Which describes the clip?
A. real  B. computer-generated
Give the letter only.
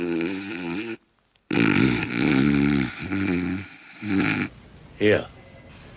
A